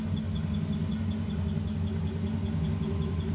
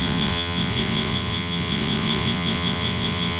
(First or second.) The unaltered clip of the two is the first